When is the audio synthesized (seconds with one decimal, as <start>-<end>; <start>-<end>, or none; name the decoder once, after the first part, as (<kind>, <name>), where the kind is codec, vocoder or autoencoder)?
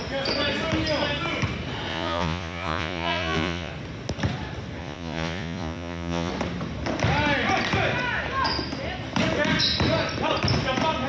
1.9-3.7 (vocoder, Vocos); 4.8-6.3